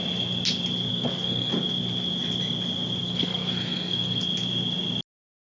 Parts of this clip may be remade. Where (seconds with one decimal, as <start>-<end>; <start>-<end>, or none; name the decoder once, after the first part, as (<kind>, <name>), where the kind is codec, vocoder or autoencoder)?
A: 0.9-1.5 (codec, SNAC); 3.0-4.2